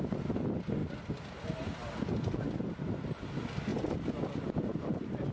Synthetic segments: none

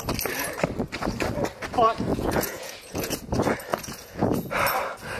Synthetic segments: 2.1-3.2 (vocoder, Vocos); 3.7-4.5

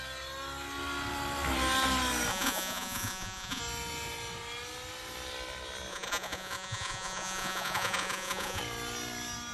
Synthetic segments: 2.3-3.6 (vocoder, Vocos); 5.9-8.6

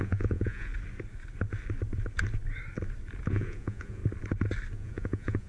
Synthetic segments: 0.0-0.7 (vocoder, Vocos); 3.3-4.0; 4.7-5.5

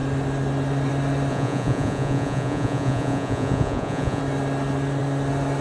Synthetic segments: 1.3-4.2 (vocoder, Vocos)

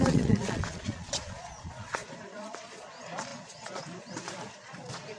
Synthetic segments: 0.0-5.2 (vocoder, Vocos)

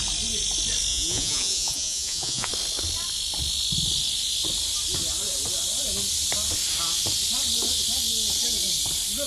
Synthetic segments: 0.9-2.5 (vocoder, Vocos)